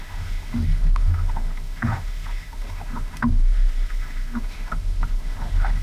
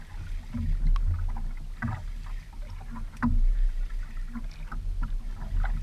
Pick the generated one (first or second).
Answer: first